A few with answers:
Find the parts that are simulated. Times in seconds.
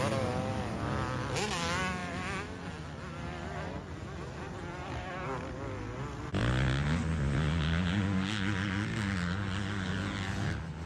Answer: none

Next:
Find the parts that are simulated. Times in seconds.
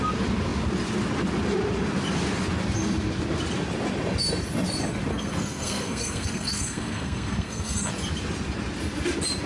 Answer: 5.1-7.9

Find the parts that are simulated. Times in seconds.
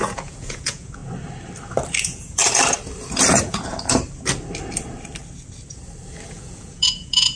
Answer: 0.0-1.0; 2.0-2.4; 6.3-7.4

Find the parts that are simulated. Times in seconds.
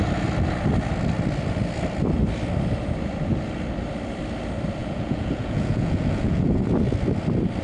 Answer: 4.8-6.6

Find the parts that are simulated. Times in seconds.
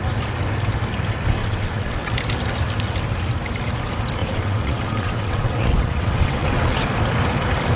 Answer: 1.4-2.1; 4.2-6.9